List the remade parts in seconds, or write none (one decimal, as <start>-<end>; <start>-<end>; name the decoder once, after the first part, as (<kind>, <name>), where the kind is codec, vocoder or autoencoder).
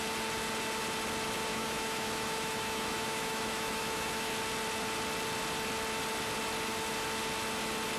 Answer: 1.5-4.3 (autoencoder, DAC-VAE)